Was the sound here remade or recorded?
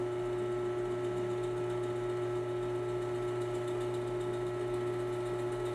recorded